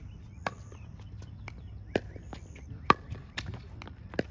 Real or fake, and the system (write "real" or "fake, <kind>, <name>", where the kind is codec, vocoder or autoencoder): fake, vocoder, BigVGAN v2